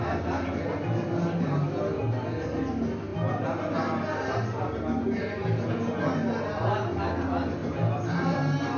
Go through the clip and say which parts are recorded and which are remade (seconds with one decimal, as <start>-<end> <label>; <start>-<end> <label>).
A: 0.0-8.8 recorded